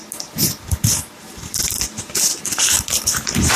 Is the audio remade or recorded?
recorded